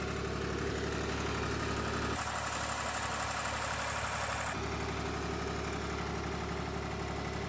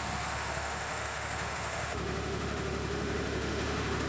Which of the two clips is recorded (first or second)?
first